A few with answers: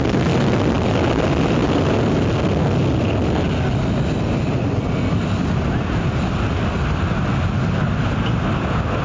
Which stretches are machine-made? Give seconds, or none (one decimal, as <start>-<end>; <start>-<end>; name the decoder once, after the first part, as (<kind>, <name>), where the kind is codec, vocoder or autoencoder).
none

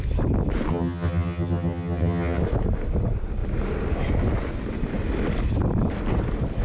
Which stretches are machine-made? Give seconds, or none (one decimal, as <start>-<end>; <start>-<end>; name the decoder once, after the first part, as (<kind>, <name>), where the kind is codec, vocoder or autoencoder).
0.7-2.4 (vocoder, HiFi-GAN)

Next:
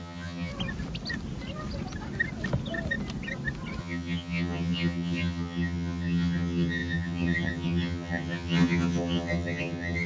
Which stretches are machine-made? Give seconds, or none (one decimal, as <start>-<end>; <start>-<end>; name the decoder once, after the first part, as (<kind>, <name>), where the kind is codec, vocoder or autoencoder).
0.0-0.5 (vocoder, HiFi-GAN); 3.8-10.1